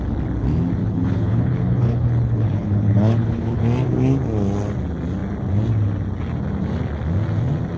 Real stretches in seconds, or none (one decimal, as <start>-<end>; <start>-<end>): 0.0-0.8; 3.6-7.8